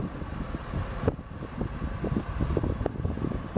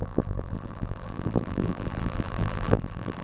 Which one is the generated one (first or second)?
second